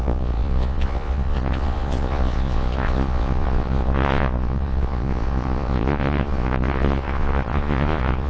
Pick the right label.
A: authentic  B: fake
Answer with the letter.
B